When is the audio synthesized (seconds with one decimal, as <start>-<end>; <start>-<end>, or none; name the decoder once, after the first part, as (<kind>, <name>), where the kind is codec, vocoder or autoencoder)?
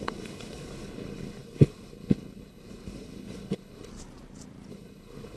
0.0-3.9 (codec, HILCodec); 4.7-5.4